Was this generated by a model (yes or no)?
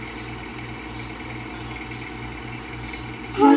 no